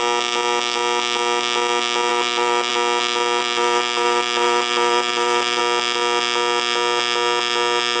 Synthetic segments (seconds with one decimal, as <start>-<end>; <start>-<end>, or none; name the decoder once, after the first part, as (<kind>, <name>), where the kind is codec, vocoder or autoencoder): 2.1-2.7 (vocoder, BigVGAN v2); 3.4-5.6